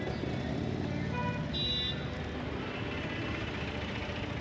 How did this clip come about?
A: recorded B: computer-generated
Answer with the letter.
A